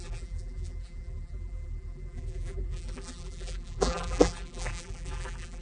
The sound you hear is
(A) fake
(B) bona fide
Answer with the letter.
A